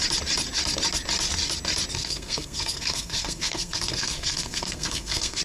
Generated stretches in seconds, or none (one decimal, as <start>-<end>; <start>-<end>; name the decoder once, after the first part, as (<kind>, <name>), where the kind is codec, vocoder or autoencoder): 2.0-5.4 (codec, SNAC)